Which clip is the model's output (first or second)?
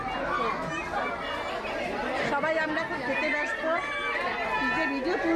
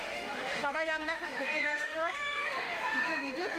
second